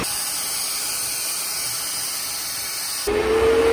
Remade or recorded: recorded